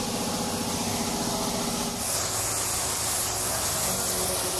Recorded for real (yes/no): yes